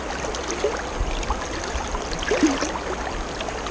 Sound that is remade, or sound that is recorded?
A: recorded